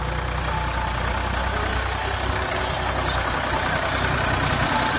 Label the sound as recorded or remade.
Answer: recorded